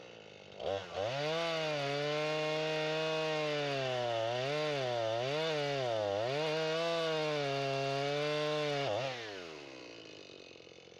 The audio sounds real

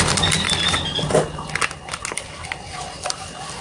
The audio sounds real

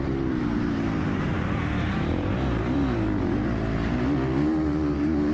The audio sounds fake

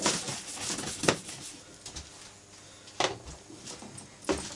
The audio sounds real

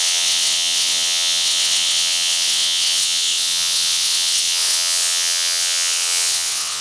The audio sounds fake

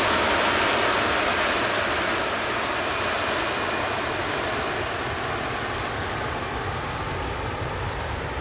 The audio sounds real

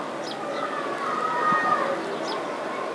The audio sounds real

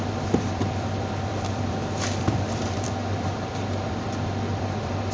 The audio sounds fake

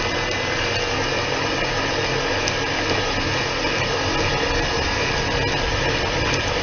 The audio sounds real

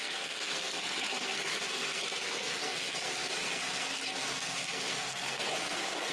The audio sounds fake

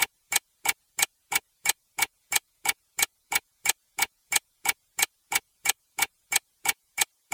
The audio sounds fake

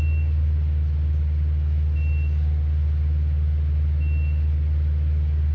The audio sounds real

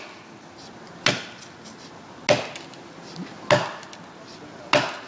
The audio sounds real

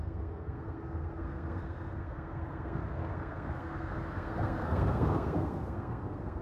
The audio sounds fake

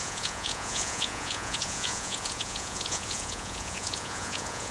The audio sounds fake